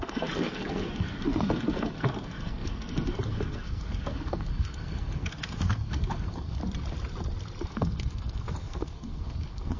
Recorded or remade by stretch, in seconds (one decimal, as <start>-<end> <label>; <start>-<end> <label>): 0.0-6.6 remade; 6.6-7.6 recorded; 7.6-9.8 remade